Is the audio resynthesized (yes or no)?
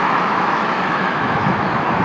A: yes